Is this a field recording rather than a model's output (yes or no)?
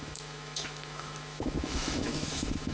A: no